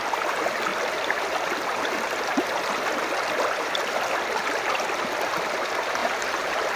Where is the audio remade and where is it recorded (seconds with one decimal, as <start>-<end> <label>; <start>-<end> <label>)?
0.0-6.0 recorded; 6.0-6.8 remade